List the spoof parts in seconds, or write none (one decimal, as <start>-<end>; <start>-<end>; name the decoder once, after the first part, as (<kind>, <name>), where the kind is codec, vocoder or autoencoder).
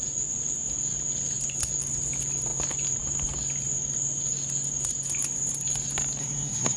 6.2-6.8 (codec, SNAC)